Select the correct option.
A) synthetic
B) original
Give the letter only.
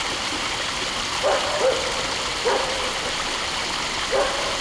B